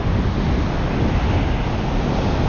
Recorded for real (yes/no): yes